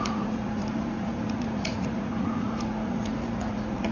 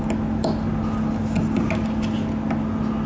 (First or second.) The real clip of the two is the second